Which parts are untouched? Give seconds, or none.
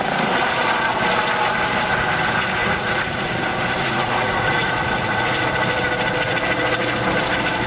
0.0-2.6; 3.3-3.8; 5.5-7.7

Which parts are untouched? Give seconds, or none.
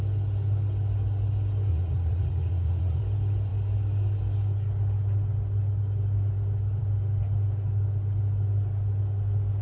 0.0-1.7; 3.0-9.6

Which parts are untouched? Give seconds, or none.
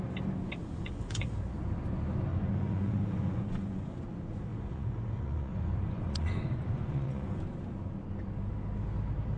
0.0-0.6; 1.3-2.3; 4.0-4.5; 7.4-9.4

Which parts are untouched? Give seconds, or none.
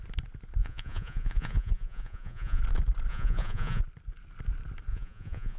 0.0-0.6; 2.6-3.1; 3.8-4.9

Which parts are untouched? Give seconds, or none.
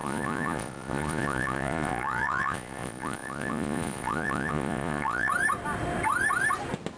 5.3-7.0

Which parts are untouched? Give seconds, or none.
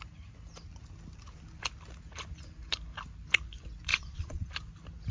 0.0-3.9; 4.5-5.1